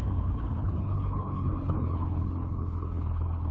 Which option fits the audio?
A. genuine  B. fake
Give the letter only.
B